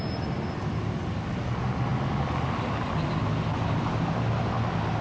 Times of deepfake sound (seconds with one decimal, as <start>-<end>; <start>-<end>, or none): none